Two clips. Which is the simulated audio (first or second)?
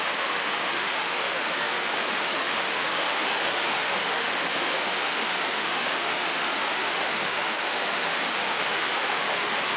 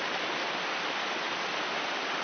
first